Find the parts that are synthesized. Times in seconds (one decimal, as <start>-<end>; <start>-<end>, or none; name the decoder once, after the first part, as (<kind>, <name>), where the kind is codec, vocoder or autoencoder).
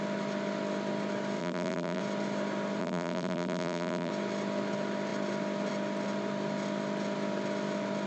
1.4-2.0 (vocoder, BigVGAN v2); 2.8-4.1